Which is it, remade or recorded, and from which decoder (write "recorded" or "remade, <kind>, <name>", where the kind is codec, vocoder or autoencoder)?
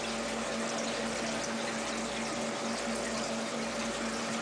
recorded